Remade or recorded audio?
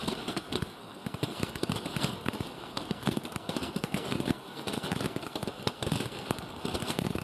remade